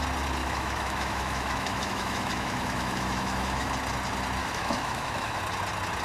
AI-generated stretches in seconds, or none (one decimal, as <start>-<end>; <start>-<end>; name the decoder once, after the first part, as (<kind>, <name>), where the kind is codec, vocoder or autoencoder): 0.4-3.7 (autoencoder, DAC-VAE); 4.4-5.4